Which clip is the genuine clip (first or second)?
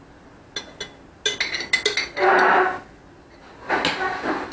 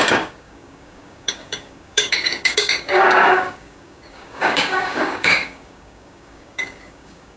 first